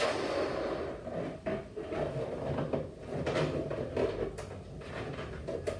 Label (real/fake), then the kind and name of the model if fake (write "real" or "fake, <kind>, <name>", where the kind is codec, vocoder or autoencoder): real